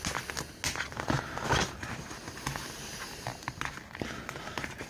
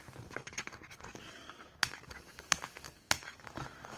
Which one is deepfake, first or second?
second